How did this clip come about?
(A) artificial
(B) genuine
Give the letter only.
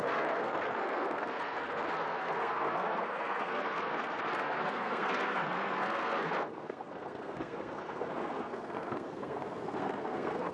A